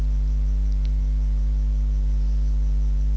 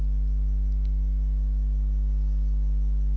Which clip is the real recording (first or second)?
second